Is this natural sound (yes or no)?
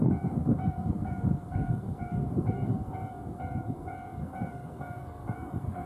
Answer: no